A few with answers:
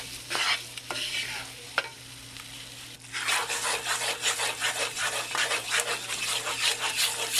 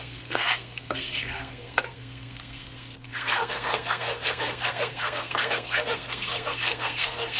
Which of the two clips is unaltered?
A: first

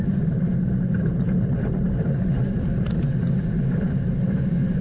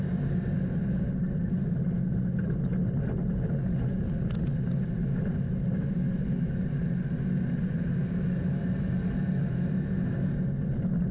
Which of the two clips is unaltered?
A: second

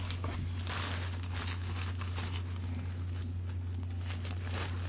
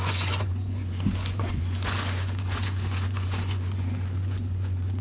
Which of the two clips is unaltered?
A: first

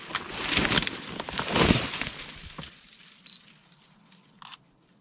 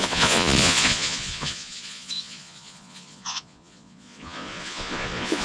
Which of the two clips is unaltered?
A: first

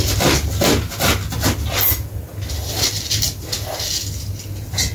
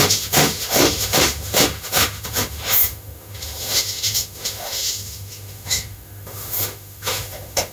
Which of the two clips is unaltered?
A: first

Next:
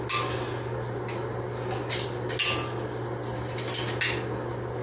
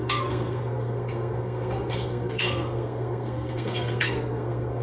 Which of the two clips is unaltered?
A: first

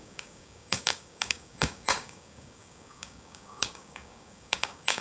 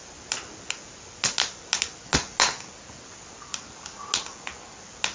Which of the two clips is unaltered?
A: second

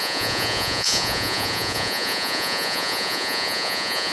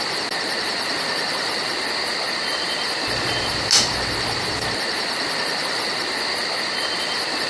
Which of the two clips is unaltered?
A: second